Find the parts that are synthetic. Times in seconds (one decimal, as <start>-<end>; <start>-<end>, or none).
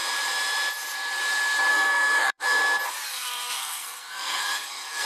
1.7-2.6; 3.1-5.1